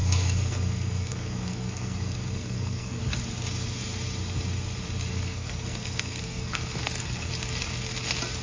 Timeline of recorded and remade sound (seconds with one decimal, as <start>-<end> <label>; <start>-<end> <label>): 0.0-3.0 remade; 3.0-5.1 recorded; 5.1-7.3 remade; 7.3-8.4 recorded